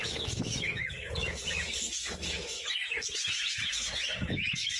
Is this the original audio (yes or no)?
no